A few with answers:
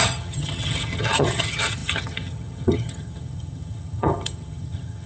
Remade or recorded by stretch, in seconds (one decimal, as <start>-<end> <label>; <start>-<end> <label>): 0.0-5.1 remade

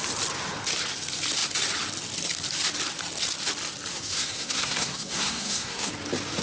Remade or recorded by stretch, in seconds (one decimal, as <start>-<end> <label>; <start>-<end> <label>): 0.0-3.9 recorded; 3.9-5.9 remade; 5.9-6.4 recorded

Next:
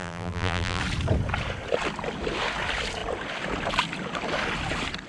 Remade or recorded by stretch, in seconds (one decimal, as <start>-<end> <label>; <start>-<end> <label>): 0.0-0.8 remade; 0.8-5.1 recorded

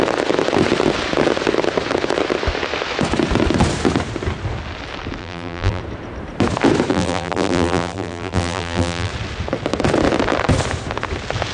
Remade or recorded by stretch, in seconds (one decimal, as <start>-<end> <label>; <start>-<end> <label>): 0.0-5.2 recorded; 5.2-5.8 remade; 5.8-6.9 recorded; 6.9-9.1 remade; 9.1-11.5 recorded

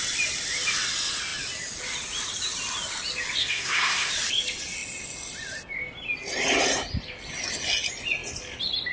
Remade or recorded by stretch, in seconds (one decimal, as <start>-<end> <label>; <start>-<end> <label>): 0.0-3.4 recorded; 3.4-4.1 remade; 4.1-8.9 recorded